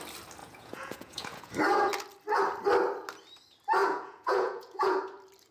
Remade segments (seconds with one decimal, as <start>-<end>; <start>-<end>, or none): 0.4-1.5; 3.8-5.0